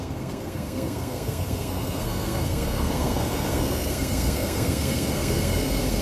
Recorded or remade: remade